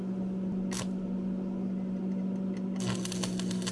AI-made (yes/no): no